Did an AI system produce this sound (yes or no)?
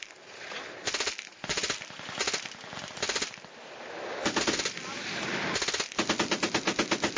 no